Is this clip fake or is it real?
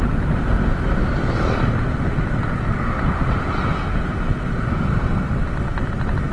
real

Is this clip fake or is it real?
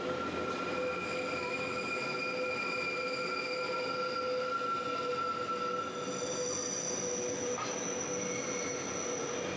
real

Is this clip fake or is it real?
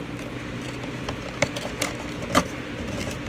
real